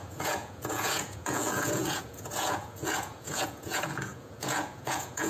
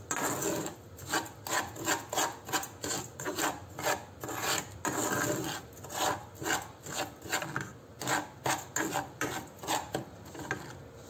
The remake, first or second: first